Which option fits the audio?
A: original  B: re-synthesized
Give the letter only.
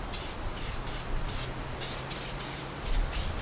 A